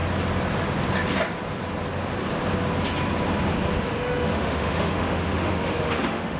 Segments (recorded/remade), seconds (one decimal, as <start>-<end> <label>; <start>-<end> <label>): 0.0-3.8 recorded; 3.8-6.4 remade